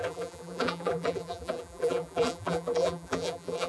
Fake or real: fake